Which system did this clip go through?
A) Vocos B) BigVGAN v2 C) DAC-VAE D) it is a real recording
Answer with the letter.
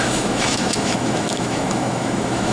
C